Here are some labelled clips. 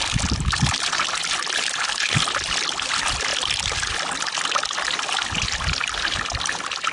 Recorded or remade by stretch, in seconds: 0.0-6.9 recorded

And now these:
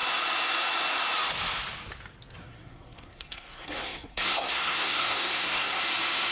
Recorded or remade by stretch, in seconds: 0.0-2.4 recorded; 2.4-5.8 remade; 5.8-6.3 recorded

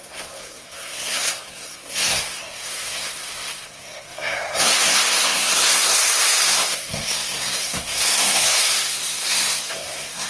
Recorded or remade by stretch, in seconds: 0.0-10.3 remade

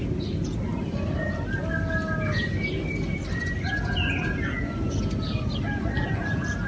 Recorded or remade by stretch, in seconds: 0.0-6.7 recorded

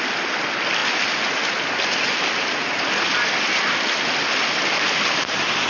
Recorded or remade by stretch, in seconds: 0.0-5.7 recorded

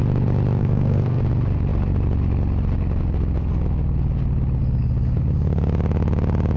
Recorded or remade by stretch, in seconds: 0.0-0.6 recorded; 0.6-1.2 remade; 1.2-6.6 recorded

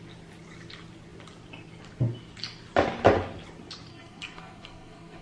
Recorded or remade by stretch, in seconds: 0.0-3.9 recorded; 3.9-5.2 remade

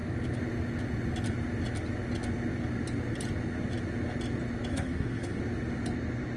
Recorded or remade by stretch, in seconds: 0.0-4.7 recorded; 4.7-5.4 remade; 5.4-6.4 recorded